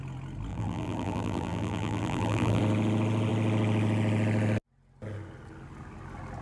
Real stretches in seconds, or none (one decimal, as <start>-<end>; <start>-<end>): 0.0-0.5; 2.6-6.4